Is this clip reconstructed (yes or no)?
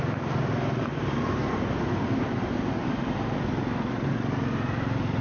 no